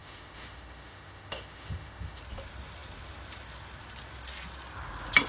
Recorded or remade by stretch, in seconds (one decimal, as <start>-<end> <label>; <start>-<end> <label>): 0.0-2.2 remade; 2.2-5.3 recorded